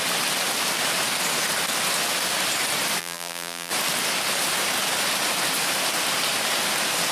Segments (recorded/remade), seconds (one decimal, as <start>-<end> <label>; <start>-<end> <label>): 0.0-3.0 recorded; 3.0-3.7 remade; 3.7-7.1 recorded